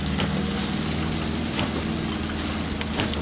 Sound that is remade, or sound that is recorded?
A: recorded